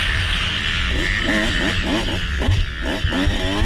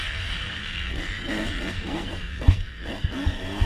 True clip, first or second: first